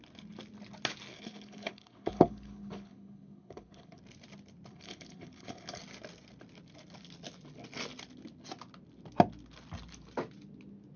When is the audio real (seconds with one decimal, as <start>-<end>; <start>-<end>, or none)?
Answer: 0.0-1.1; 4.0-4.7; 5.8-11.0